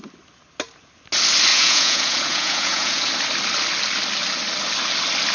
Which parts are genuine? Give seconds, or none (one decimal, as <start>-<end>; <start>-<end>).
0.0-1.5; 3.1-5.3